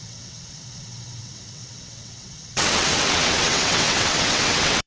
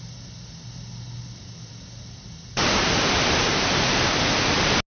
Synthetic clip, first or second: first